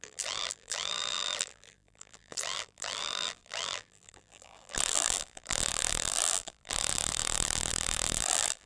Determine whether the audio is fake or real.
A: fake